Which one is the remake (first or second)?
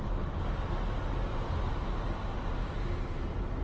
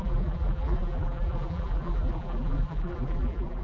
second